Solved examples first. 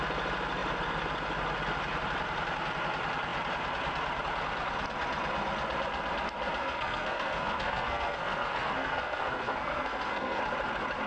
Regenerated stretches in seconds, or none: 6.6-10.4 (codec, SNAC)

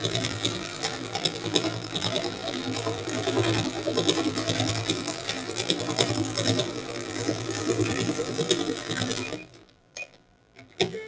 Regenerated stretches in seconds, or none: 0.0-11.1 (vocoder, BigVGAN v2)

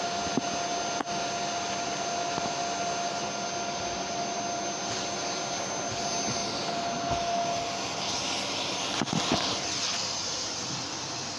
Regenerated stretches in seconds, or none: none

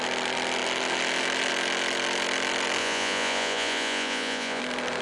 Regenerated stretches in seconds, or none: 2.8-4.6 (vocoder, Vocos)

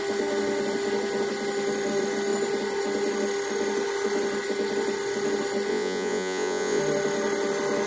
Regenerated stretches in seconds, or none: 5.7-6.8 (vocoder, Vocos)